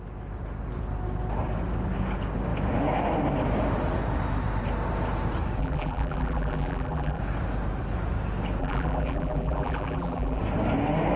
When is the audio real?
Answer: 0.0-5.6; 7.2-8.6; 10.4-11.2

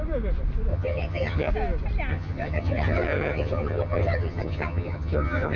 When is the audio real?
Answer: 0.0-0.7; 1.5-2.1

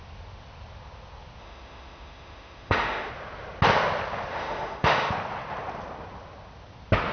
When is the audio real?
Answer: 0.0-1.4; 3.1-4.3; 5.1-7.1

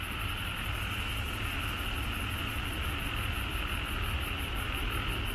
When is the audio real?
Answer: 0.0-5.3

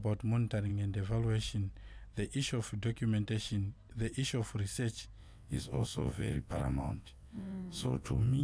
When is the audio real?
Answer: 0.0-5.2

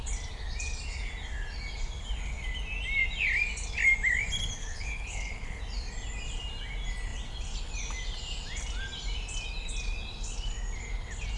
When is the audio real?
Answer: 0.0-4.6; 5.6-11.4

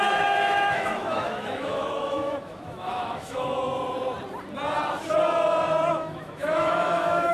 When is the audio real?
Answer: 3.5-5.9